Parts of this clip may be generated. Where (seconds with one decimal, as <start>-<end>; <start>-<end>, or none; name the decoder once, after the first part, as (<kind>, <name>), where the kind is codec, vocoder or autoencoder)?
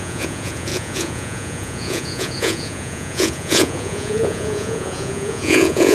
0.0-5.9 (vocoder, Vocos)